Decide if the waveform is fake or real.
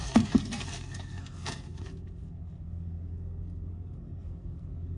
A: fake